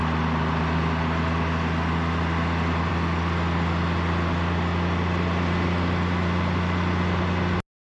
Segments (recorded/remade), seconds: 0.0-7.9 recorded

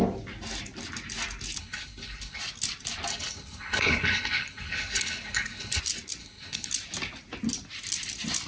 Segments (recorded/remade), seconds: 0.0-1.6 recorded; 1.6-2.4 remade; 2.4-3.1 recorded; 3.1-5.8 remade; 5.8-6.2 recorded; 6.2-6.7 remade; 6.7-8.5 recorded

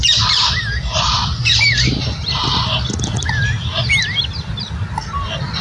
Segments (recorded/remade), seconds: 0.0-5.6 recorded

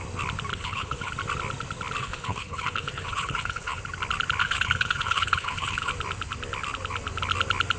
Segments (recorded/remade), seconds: 0.0-0.5 recorded; 0.5-1.1 remade; 1.1-2.0 recorded; 2.0-3.8 remade; 3.8-4.4 recorded; 4.4-5.9 remade; 5.9-7.8 recorded

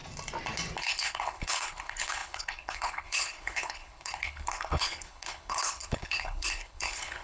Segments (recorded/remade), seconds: 0.0-0.8 recorded; 0.8-7.2 remade

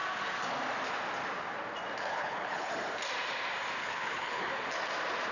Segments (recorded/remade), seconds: 0.0-2.1 recorded; 2.1-2.7 remade; 2.7-3.8 recorded; 3.8-4.5 remade; 4.5-5.3 recorded